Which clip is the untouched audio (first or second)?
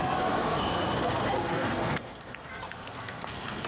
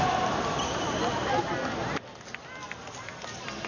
second